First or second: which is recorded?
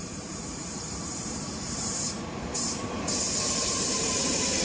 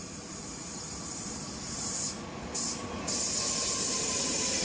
second